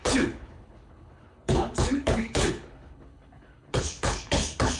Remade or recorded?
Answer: remade